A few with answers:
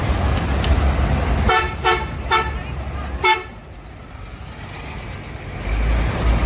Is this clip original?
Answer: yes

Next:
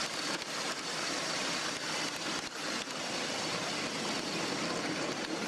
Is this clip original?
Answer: yes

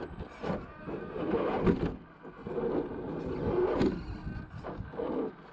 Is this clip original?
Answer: yes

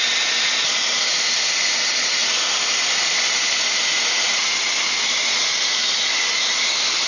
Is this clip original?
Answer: yes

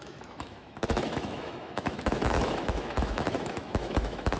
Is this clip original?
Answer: no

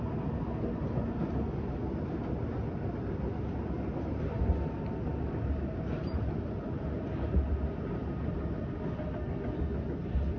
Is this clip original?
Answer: yes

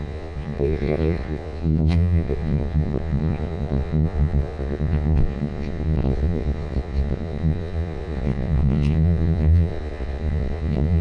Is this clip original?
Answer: no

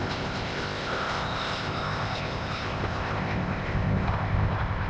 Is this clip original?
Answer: no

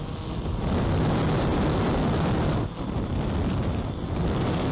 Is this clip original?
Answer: yes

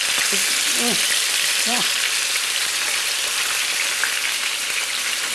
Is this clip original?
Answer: yes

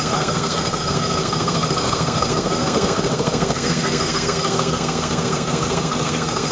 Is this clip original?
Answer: no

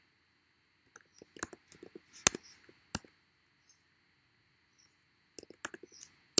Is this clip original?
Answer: yes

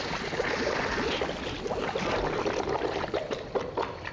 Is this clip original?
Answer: yes